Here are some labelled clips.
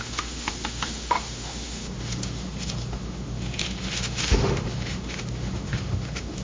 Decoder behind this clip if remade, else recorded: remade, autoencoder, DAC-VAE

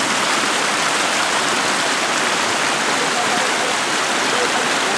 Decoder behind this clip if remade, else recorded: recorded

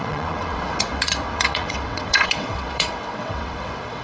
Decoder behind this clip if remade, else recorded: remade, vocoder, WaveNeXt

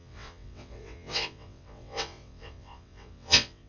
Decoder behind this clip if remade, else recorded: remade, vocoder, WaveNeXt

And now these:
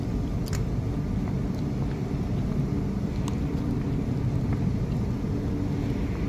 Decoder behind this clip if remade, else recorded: recorded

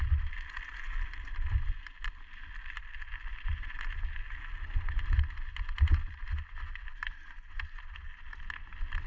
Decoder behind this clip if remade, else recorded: recorded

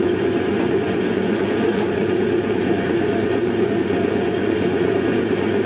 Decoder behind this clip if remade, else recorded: remade, vocoder, Vocos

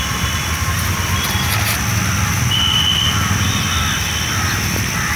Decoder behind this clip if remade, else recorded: recorded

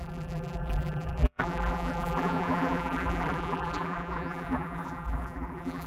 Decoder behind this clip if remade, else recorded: remade, vocoder, BigVGAN v2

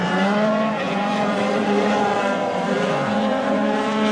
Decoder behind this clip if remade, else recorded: remade, vocoder, Vocos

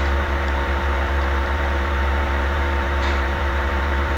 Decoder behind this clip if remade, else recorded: remade, vocoder, BigVGAN v2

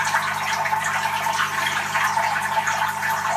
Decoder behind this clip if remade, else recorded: recorded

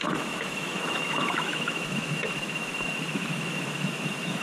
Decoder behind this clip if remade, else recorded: remade, autoencoder, DAC-VAE